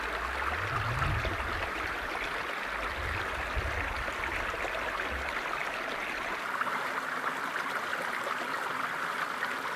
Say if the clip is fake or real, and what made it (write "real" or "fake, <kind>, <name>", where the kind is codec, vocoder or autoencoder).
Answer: real